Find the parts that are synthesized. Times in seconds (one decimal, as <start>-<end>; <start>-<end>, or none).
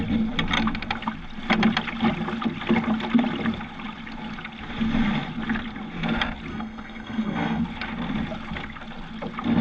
6.5-7.6